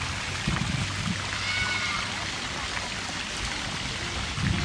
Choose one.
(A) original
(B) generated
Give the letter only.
A